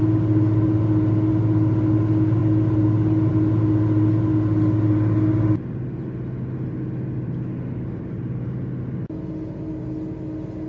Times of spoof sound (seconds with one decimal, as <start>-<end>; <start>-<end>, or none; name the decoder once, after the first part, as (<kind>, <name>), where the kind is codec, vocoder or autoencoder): none